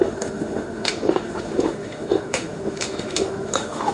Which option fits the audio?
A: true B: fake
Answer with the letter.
B